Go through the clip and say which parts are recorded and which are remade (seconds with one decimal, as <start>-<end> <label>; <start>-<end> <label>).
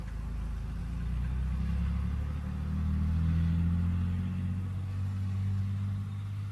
0.0-4.9 recorded; 4.9-5.6 remade; 5.6-6.5 recorded